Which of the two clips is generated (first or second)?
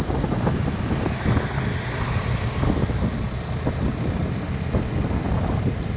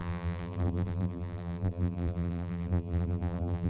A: second